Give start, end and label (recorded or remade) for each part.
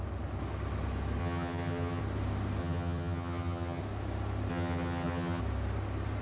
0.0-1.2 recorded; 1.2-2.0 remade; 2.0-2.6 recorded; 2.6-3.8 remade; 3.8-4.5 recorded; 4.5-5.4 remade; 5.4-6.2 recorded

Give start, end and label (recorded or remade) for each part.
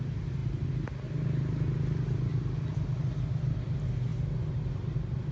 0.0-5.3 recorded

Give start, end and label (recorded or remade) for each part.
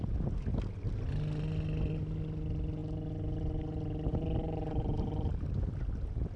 0.0-6.4 recorded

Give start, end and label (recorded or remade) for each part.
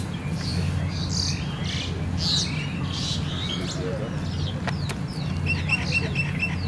0.0-6.7 recorded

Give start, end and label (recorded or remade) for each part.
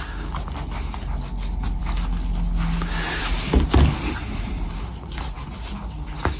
0.0-6.4 recorded